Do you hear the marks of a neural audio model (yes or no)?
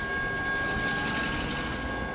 no